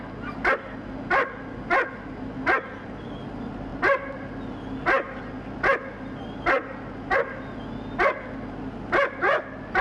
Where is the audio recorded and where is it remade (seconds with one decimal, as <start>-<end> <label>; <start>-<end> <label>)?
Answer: 0.0-9.8 recorded

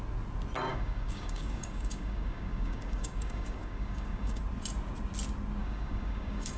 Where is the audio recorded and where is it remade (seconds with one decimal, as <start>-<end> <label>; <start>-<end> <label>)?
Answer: 0.0-0.7 recorded; 0.7-4.4 remade; 4.4-5.6 recorded; 5.6-6.6 remade